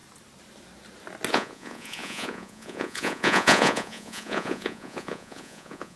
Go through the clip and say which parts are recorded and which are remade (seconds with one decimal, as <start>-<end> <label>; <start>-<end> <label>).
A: 0.0-1.3 recorded; 1.3-6.0 remade